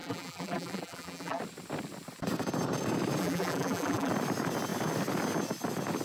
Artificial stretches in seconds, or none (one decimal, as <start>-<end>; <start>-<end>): 0.0-1.4; 3.2-4.1